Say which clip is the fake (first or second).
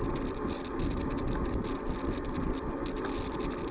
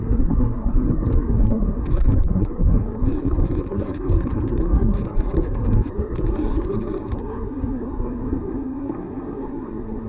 second